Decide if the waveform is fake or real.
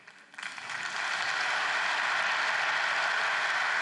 real